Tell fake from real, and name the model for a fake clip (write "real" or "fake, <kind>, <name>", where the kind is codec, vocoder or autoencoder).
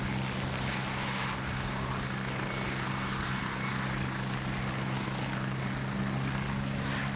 real